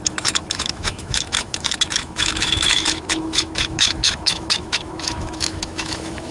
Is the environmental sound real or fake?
fake